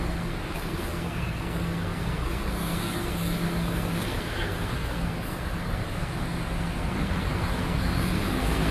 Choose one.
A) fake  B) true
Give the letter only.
A